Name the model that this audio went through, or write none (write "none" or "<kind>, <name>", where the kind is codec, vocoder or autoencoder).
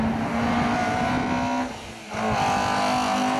none